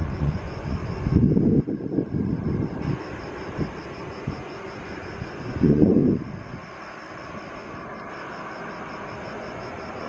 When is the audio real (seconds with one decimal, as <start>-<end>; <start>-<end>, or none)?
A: 0.8-3.9; 6.0-9.2